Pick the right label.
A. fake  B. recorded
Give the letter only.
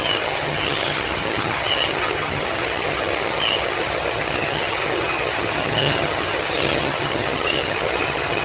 A